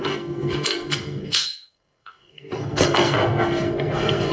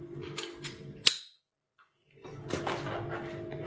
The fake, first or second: first